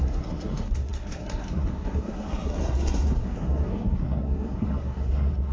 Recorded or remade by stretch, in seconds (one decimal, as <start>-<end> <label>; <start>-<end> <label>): 0.0-5.5 remade